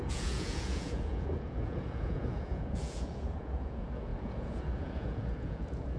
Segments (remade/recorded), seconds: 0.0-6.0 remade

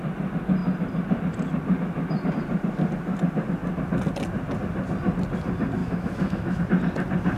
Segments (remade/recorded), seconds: 0.0-5.8 recorded; 5.8-6.6 remade; 6.6-7.4 recorded

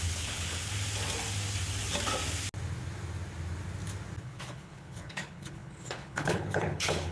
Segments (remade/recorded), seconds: 0.0-0.7 remade; 0.7-4.2 recorded; 4.2-7.1 remade